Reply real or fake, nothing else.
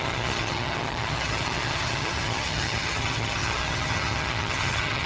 fake